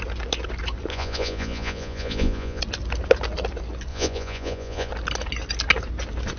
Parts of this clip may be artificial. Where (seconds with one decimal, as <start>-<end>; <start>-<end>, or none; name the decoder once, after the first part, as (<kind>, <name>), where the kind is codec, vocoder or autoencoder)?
0.9-2.6 (vocoder, Vocos); 3.9-4.9